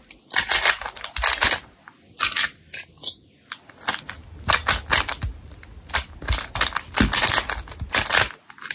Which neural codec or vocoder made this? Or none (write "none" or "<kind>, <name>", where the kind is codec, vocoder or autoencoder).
none